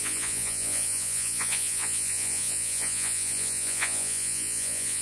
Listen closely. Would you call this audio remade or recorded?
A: remade